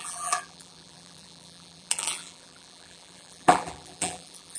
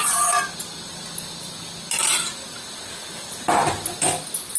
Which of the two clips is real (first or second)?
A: second